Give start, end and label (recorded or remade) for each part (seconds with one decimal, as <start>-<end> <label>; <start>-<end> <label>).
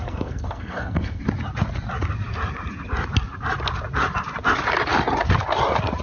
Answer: 0.0-1.2 remade; 1.2-6.0 recorded